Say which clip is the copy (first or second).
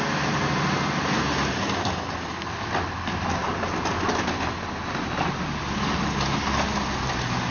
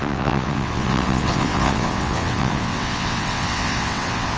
second